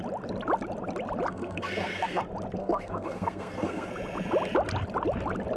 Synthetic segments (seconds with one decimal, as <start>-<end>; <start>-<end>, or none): 1.3-2.2; 2.6-3.9